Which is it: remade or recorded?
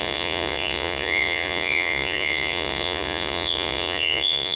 remade